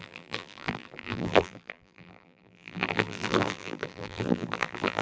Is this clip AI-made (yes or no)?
yes